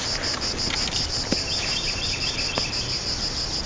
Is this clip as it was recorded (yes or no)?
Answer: yes